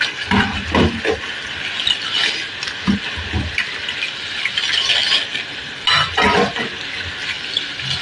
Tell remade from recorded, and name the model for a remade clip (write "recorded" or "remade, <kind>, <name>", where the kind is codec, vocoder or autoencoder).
recorded